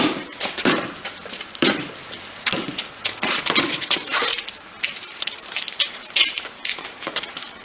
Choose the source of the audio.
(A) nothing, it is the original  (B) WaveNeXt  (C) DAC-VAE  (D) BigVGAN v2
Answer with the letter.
D